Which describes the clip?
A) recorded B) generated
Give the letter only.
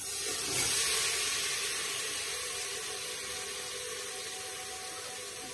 A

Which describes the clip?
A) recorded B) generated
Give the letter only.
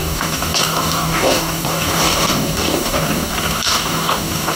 B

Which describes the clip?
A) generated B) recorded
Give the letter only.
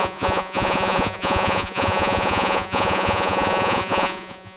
A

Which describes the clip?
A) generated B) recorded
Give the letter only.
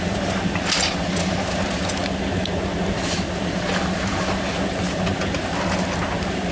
B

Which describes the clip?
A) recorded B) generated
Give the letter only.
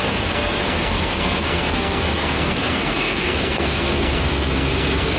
B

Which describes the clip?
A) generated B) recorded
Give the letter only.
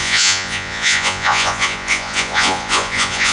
A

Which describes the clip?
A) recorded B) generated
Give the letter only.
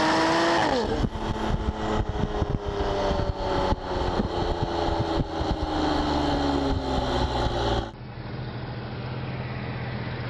A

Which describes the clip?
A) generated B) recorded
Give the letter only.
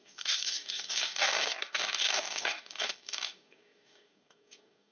A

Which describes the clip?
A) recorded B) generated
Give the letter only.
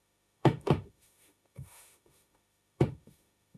B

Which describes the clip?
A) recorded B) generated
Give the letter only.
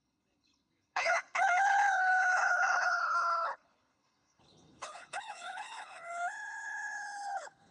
B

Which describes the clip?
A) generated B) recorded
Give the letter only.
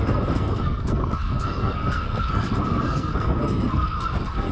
A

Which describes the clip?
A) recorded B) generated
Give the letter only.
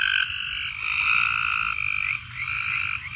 A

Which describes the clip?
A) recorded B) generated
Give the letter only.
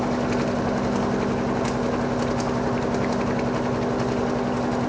A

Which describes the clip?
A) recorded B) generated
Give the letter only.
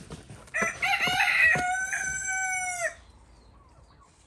A